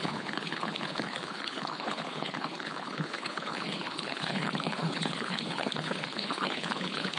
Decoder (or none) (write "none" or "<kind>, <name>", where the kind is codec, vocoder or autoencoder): codec, HILCodec